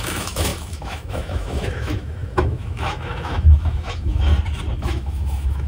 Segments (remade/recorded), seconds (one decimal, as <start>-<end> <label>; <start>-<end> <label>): 0.0-4.3 remade; 4.3-4.8 recorded; 4.8-5.7 remade